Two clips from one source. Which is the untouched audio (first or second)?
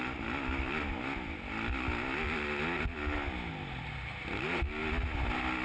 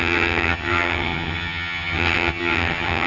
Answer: first